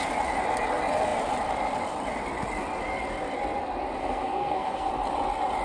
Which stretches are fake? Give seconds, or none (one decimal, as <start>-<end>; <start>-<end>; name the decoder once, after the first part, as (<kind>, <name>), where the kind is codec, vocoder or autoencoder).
4.0-4.9 (codec, SNAC)